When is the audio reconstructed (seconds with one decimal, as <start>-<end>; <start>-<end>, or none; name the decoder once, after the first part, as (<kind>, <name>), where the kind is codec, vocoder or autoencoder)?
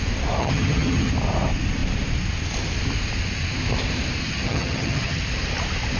0.4-1.1 (vocoder, HiFi-GAN); 4.2-5.2